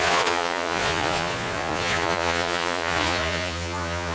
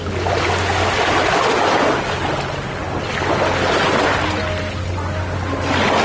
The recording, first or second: second